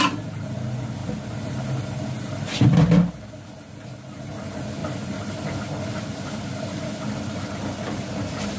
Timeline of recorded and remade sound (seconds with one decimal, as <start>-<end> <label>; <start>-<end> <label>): 0.0-8.6 recorded

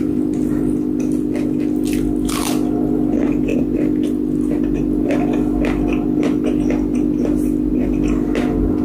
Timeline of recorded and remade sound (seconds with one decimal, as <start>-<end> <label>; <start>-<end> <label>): 0.0-8.8 recorded

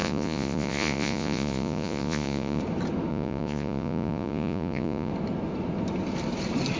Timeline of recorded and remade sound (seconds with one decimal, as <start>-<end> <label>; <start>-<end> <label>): 0.0-2.6 remade; 2.6-3.1 recorded; 3.1-5.1 remade; 5.1-6.8 recorded

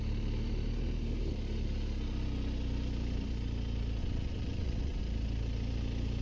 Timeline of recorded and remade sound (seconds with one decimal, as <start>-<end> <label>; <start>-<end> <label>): 0.0-4.0 recorded; 4.0-5.0 remade; 5.0-6.2 recorded